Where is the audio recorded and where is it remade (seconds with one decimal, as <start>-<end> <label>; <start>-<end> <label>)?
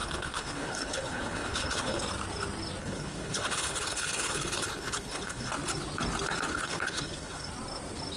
0.0-2.0 remade; 2.0-2.8 recorded; 2.8-5.5 remade; 5.5-6.5 recorded; 6.5-7.5 remade; 7.5-8.2 recorded